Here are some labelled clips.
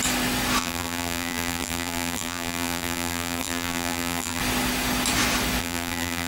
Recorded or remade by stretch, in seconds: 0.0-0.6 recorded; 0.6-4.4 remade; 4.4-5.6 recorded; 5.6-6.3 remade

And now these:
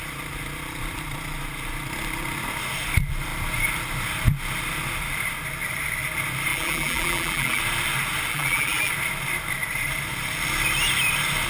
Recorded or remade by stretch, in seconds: 0.0-6.5 recorded; 6.5-7.6 remade; 7.6-8.3 recorded; 8.3-8.9 remade; 8.9-11.5 recorded

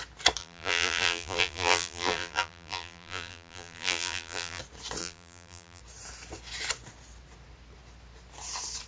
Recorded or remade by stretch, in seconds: 0.0-0.4 recorded; 0.4-4.6 remade; 4.6-5.0 recorded; 5.0-5.8 remade; 5.8-8.9 recorded

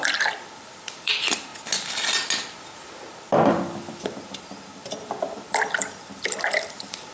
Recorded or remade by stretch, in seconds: 0.0-1.5 remade; 1.5-3.5 recorded; 3.5-7.1 remade

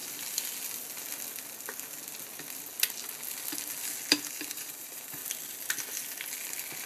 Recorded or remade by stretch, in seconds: 0.0-4.1 recorded; 4.1-5.2 remade; 5.2-6.9 recorded